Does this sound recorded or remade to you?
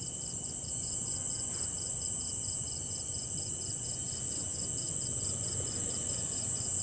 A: remade